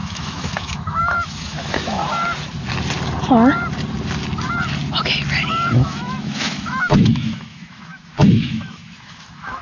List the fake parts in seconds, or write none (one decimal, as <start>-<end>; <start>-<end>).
0.0-2.0; 5.7-9.6